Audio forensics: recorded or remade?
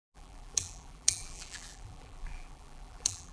remade